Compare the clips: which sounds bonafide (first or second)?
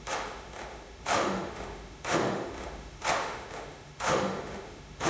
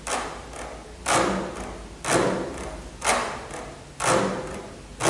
second